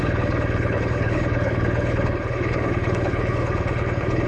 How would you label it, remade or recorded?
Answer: remade